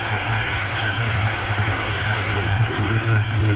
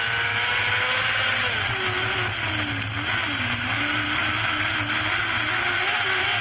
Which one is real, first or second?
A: second